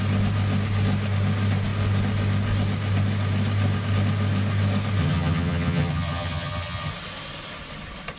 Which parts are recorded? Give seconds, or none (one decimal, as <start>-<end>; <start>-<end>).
0.0-5.0; 6.9-8.2